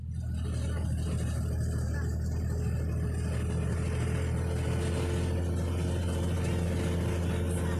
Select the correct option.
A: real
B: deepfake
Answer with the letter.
A